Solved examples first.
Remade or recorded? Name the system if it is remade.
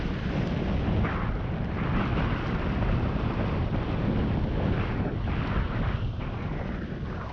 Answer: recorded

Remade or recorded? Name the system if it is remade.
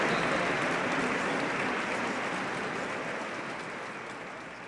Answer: recorded